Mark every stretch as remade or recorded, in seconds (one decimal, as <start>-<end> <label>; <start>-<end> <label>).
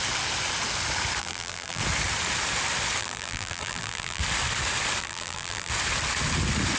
0.0-1.2 recorded; 1.2-1.8 remade; 1.8-3.0 recorded; 3.0-4.2 remade; 4.2-5.0 recorded; 5.0-5.7 remade; 5.7-6.8 recorded